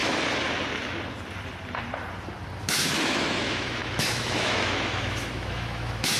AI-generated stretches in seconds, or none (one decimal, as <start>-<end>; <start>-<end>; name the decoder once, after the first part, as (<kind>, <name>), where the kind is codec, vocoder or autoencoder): 2.6-6.2 (autoencoder, DAC-VAE)